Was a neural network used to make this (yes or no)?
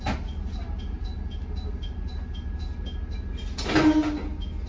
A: no